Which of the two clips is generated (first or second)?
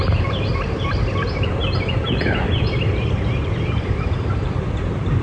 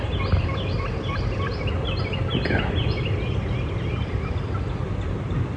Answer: first